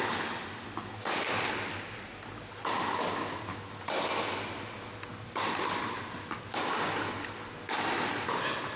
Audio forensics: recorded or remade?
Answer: recorded